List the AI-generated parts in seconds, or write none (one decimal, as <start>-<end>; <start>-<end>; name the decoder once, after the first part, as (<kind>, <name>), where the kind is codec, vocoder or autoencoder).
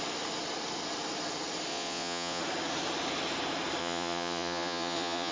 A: 1.7-2.4 (vocoder, Vocos); 3.8-5.3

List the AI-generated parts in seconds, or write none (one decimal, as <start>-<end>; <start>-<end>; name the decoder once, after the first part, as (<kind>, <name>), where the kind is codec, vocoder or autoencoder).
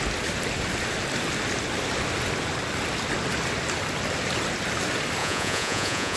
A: 5.2-6.2 (vocoder, Vocos)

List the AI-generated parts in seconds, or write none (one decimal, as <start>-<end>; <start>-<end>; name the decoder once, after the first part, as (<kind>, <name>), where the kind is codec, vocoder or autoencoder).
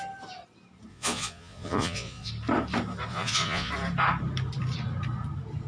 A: 0.9-2.3 (vocoder, Vocos); 3.1-3.7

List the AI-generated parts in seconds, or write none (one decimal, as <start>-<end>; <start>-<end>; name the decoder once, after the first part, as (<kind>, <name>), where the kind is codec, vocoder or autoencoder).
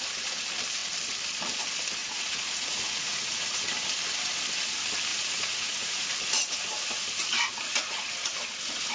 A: 2.0-3.6 (vocoder, Vocos); 5.1-6.1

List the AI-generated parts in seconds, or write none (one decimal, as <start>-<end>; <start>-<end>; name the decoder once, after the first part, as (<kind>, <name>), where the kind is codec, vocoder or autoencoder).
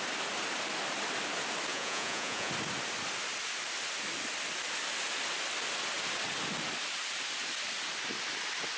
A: 1.7-2.5 (vocoder, Vocos)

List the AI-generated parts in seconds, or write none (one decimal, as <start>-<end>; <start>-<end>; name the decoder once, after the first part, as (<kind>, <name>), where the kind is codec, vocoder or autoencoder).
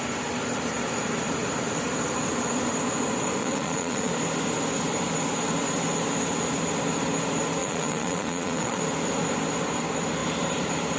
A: 3.4-4.1 (vocoder, Vocos); 7.6-8.8